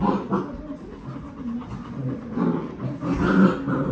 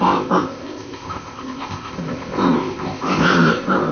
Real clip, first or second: first